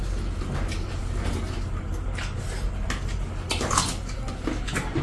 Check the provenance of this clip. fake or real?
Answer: real